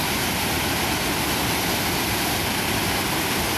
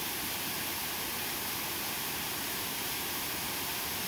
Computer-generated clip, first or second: second